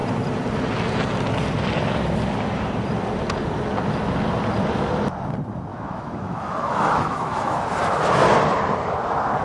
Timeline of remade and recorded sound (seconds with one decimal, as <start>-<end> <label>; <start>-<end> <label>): 0.0-5.7 recorded; 5.7-7.6 remade; 7.6-9.4 recorded

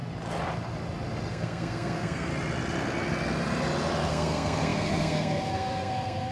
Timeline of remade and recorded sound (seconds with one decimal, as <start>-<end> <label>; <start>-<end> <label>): 0.0-1.3 recorded; 1.3-2.3 remade; 2.3-4.1 recorded; 4.1-6.3 remade